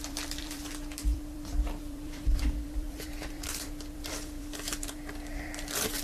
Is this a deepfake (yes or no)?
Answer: yes